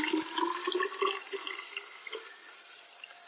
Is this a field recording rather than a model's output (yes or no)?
yes